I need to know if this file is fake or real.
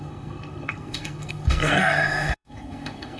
fake